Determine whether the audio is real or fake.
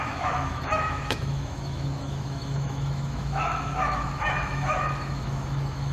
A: fake